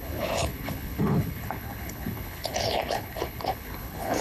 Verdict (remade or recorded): remade